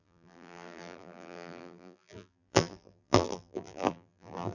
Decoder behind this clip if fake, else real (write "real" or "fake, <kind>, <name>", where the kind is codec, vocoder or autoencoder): fake, vocoder, BigVGAN v2